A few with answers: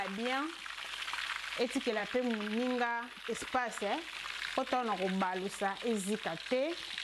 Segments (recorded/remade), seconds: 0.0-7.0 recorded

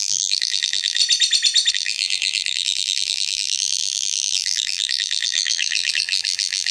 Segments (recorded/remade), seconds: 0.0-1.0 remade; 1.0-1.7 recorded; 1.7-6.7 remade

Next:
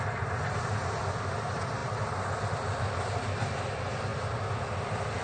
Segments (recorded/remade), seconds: 0.0-5.2 recorded

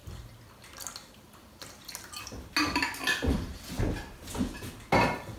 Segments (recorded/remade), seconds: 0.0-5.4 recorded